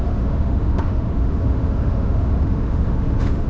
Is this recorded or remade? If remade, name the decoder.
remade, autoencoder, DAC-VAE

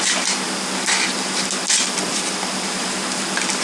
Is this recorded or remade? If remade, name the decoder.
recorded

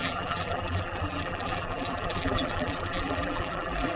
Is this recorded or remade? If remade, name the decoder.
remade, vocoder, BigVGAN v2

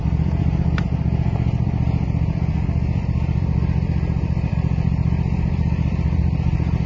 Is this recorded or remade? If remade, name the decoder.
remade, vocoder, BigVGAN v2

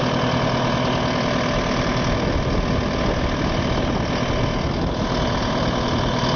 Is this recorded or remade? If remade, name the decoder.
recorded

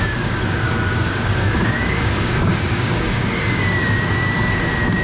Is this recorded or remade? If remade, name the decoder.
remade, codec, DAC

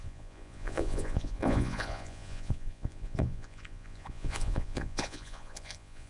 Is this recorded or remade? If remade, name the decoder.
remade, vocoder, Vocos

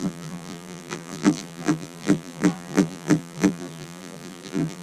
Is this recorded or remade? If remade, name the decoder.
remade, vocoder, BigVGAN v2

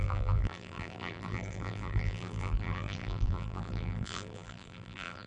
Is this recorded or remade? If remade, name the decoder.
remade, vocoder, BigVGAN v2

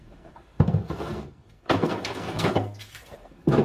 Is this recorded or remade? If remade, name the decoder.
remade, codec, SNAC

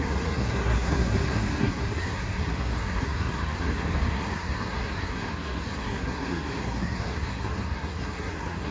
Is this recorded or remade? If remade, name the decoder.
remade, codec, SNAC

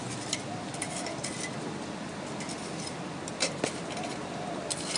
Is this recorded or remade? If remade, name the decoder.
recorded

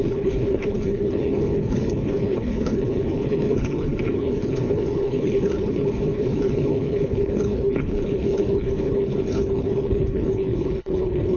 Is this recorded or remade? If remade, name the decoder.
remade, codec, HILCodec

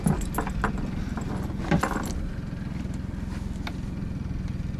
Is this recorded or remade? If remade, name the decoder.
recorded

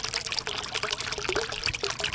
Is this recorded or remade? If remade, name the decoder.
recorded